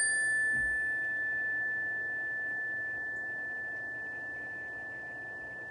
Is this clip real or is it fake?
real